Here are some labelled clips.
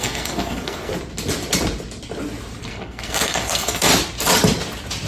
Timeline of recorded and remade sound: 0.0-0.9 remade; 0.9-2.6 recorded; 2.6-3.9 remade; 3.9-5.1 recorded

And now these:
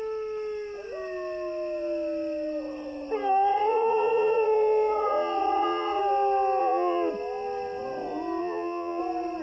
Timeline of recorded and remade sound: 0.0-3.5 recorded; 3.5-6.0 remade; 6.0-6.6 recorded; 6.6-7.1 remade; 7.1-8.4 recorded; 8.4-9.0 remade; 9.0-9.4 recorded

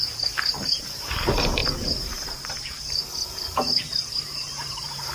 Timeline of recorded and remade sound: 0.0-1.6 recorded; 1.6-2.8 remade; 2.8-5.1 recorded

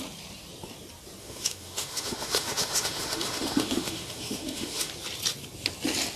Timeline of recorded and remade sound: 0.0-1.2 recorded; 1.2-4.9 remade; 4.9-6.2 recorded